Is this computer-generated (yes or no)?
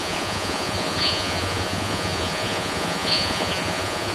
yes